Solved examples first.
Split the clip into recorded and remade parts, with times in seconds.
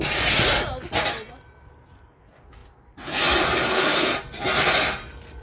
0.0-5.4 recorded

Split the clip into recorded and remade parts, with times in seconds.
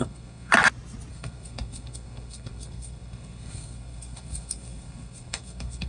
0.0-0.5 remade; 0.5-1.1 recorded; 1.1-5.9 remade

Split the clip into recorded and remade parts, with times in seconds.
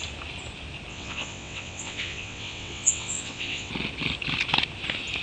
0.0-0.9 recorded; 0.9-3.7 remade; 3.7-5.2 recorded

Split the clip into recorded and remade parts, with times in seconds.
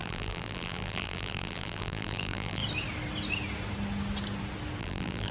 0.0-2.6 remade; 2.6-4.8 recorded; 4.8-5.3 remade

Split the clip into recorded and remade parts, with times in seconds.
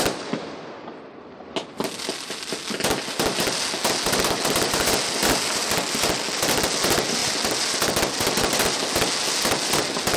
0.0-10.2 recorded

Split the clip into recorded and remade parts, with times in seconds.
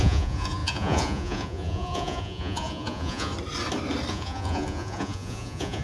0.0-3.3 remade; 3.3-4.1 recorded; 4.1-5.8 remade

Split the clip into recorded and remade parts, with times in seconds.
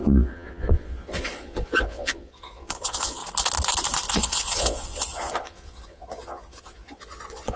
0.0-3.2 remade; 3.2-4.1 recorded; 4.1-7.6 remade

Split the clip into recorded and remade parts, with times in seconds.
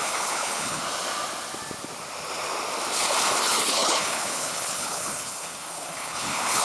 0.0-0.8 remade; 0.8-3.4 recorded; 3.4-6.6 remade